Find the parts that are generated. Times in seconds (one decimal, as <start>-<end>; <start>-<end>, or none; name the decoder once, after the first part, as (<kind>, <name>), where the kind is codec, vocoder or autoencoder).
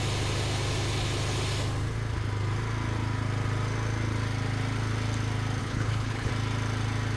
5.6-6.3 (codec, HILCodec)